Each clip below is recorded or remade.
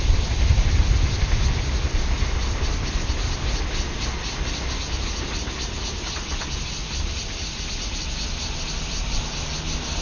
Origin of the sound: recorded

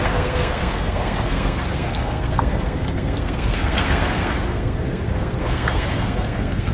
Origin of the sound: remade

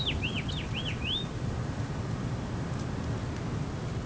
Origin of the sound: recorded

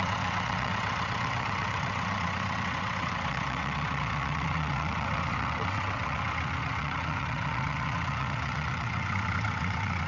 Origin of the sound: remade